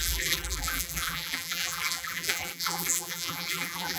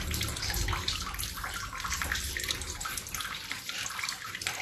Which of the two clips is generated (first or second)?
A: first